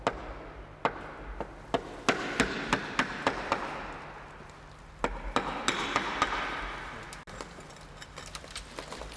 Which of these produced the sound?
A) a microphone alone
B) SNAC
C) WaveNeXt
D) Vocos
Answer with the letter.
A